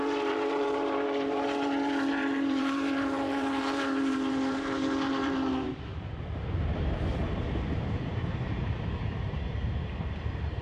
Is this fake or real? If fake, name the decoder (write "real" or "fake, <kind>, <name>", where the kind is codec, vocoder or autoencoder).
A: fake, vocoder, BigVGAN v2